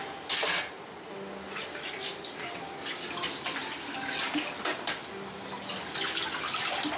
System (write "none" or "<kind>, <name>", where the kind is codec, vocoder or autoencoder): none